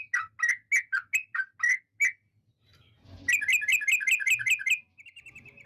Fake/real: real